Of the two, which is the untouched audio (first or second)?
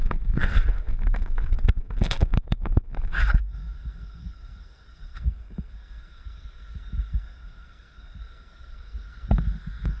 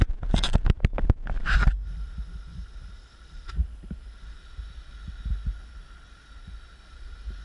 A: second